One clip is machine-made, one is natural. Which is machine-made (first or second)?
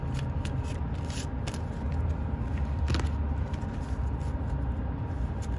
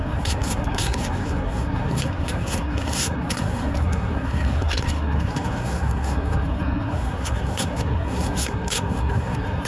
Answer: second